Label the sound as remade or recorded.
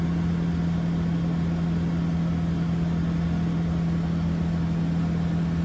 recorded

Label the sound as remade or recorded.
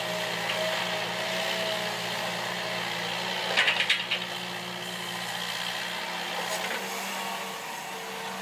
recorded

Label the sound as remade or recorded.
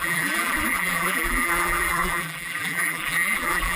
remade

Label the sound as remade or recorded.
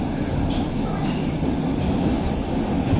recorded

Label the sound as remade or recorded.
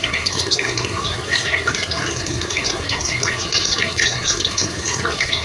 remade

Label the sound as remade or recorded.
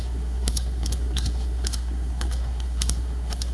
remade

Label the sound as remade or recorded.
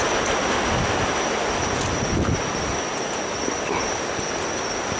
recorded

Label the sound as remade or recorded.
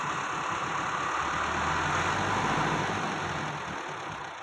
recorded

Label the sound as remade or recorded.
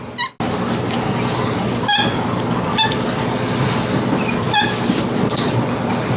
recorded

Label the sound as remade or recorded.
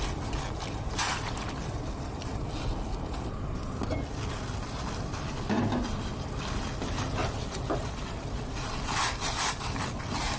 recorded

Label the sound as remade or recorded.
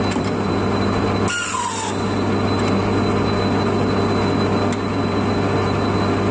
recorded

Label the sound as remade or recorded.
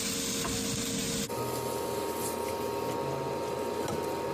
recorded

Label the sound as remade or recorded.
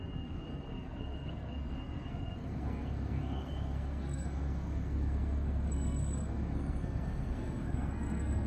remade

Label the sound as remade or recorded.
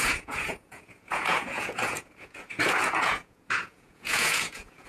remade